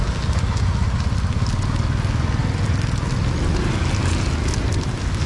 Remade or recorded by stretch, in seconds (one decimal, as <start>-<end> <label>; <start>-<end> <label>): 0.0-5.3 recorded